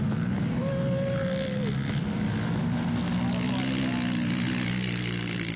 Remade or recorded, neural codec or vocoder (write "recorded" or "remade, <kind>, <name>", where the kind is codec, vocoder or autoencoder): recorded